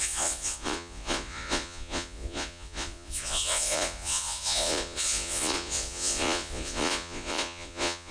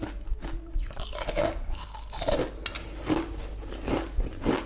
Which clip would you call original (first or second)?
second